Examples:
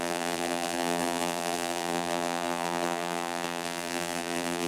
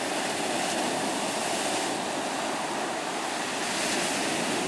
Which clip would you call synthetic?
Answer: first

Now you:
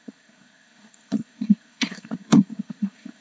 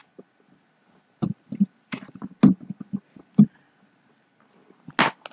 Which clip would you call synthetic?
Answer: first